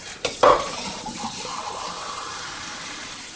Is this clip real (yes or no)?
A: no